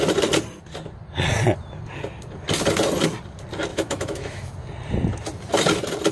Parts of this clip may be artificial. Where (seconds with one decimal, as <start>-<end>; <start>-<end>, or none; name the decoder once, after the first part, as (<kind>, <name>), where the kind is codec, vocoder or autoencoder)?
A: 3.7-4.5 (autoencoder, DAC-VAE)